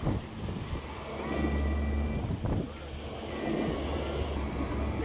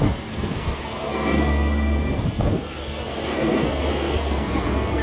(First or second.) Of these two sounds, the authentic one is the first